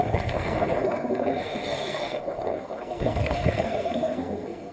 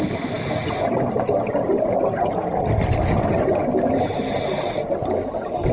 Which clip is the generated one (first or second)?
first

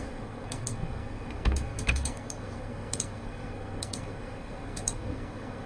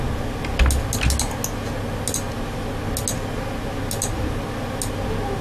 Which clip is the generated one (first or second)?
first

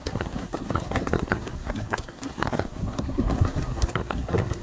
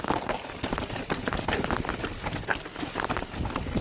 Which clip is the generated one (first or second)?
first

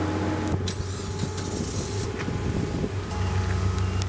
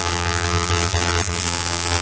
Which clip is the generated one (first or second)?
second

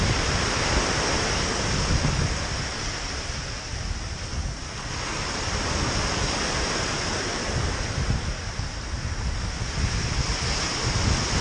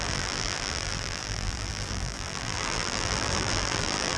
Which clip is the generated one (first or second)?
second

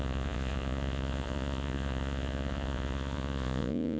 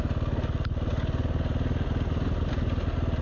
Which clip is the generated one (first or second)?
first